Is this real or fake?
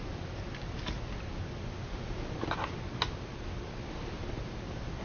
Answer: real